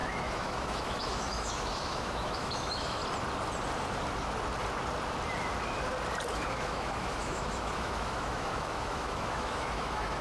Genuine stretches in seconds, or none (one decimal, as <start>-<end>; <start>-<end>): 3.0-6.3